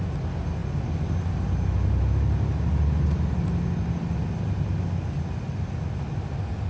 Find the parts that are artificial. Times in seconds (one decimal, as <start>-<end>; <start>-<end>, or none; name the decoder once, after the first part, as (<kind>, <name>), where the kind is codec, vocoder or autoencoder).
none